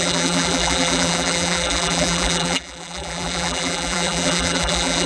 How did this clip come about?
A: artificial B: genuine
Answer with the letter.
A